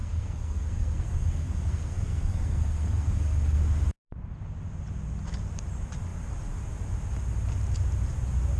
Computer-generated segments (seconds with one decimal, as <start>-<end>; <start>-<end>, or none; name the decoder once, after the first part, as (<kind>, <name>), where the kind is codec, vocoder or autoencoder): 0.0-3.6 (codec, SNAC)